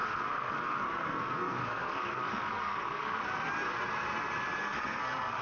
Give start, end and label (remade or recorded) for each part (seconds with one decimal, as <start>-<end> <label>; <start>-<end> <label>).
0.0-3.2 remade; 3.2-4.6 recorded; 4.6-5.4 remade